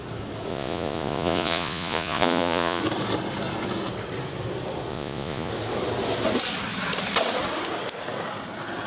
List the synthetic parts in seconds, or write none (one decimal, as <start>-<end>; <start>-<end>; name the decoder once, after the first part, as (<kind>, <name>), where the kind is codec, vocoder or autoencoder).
0.5-2.8 (vocoder, Vocos); 4.9-5.5